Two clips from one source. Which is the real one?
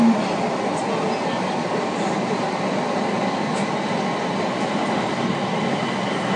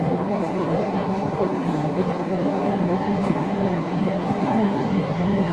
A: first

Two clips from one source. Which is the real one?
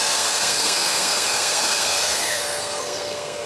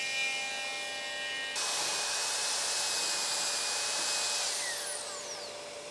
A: second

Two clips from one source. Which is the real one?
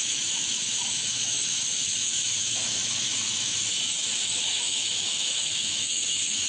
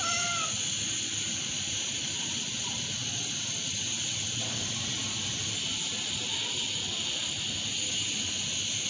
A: second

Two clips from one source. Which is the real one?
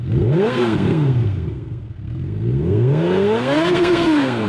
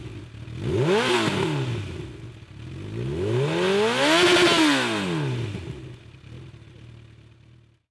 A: second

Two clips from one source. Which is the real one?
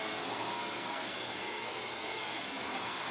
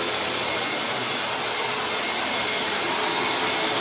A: second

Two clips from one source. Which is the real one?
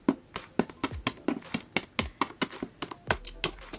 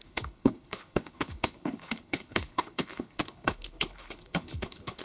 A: first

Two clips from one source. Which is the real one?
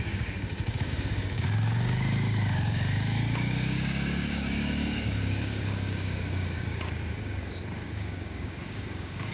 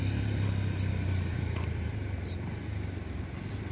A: second